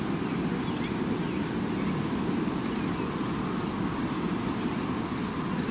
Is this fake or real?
real